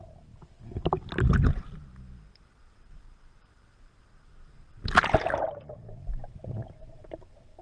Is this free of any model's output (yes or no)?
yes